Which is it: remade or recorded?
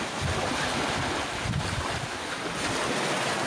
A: recorded